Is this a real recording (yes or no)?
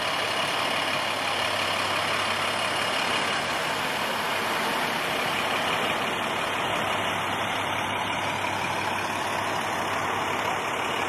yes